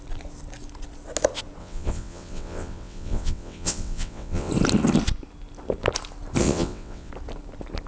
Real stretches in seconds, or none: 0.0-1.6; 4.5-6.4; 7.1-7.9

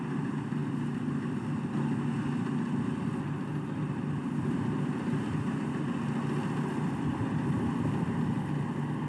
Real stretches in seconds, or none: 0.0-9.1